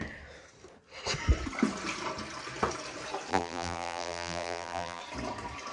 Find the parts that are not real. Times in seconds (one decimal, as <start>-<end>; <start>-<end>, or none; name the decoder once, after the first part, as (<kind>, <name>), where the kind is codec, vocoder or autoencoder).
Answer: 3.3-5.0 (vocoder, BigVGAN v2)